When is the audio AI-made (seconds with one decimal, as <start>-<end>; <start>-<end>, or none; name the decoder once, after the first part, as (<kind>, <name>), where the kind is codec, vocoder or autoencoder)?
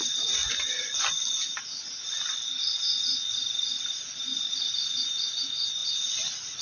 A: 0.0-0.4 (vocoder, BigVGAN v2); 4.2-5.8